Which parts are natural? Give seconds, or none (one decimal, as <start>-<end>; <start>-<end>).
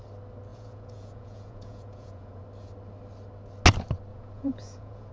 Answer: 0.0-0.5; 2.4-4.1